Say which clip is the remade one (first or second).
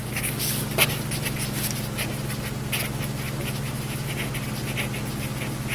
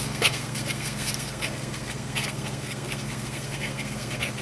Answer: second